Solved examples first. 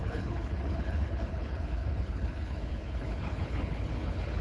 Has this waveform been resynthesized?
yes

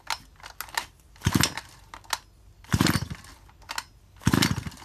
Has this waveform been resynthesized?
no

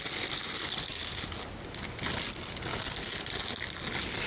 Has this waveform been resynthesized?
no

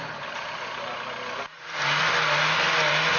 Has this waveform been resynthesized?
no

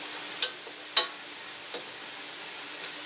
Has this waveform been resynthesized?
no